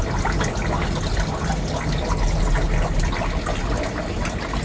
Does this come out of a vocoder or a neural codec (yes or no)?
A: no